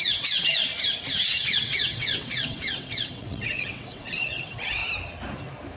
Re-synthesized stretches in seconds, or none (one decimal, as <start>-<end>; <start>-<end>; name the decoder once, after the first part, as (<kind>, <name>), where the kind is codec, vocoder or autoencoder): 0.0-0.7 (vocoder, WaveNeXt); 1.2-4.8